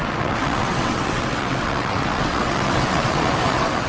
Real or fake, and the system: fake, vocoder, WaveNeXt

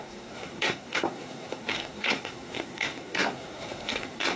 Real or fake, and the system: fake, codec, SNAC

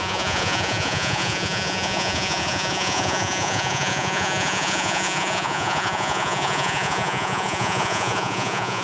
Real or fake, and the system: fake, vocoder, Vocos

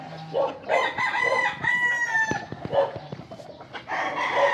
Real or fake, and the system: real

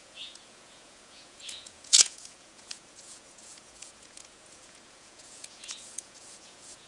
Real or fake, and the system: fake, vocoder, Vocos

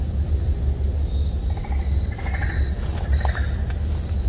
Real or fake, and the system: real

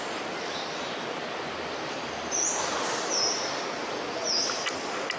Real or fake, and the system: real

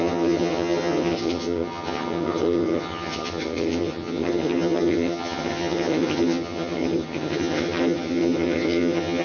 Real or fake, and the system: fake, vocoder, HiFi-GAN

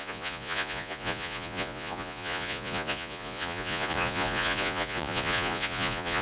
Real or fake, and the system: fake, vocoder, Vocos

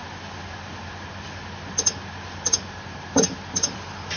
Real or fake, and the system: real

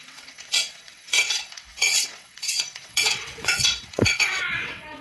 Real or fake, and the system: fake, vocoder, WaveNeXt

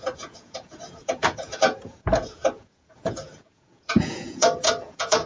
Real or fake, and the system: fake, vocoder, Vocos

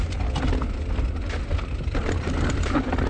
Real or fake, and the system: real